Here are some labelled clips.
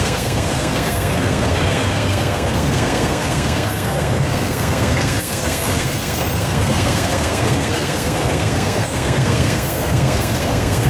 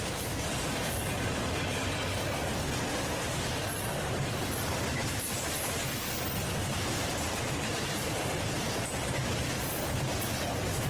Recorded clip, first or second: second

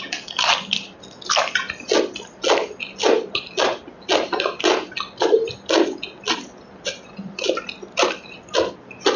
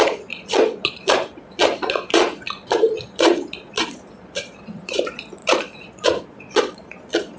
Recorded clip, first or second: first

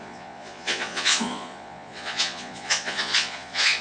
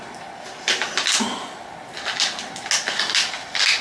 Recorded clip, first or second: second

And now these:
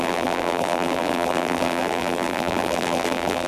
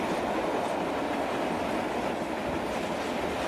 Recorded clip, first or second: second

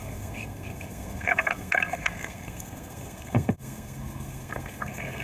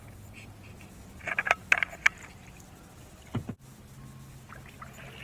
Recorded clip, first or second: second